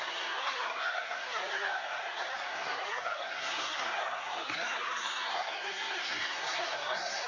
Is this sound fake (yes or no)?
yes